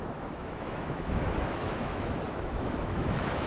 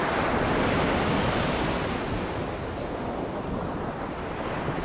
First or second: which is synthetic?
first